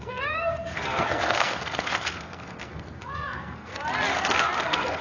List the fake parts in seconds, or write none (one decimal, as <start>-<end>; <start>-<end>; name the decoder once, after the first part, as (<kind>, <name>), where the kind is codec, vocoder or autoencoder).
0.0-3.7 (codec, SNAC); 4.6-5.0